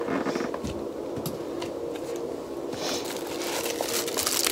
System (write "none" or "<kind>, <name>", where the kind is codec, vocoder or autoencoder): none